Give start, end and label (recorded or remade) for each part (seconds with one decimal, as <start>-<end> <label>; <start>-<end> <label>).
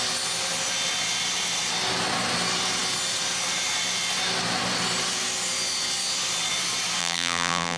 0.0-7.0 recorded; 7.0-7.8 remade